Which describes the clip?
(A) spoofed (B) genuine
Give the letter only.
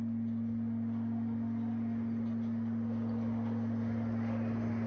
B